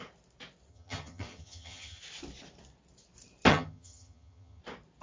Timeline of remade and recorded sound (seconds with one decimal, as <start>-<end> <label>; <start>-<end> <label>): 0.0-0.7 recorded; 0.7-2.0 remade; 2.0-3.5 recorded; 3.5-4.6 remade; 4.6-5.0 recorded